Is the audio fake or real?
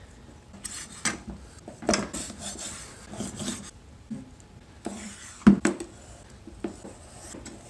real